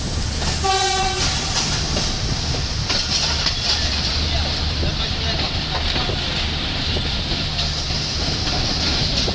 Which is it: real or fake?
real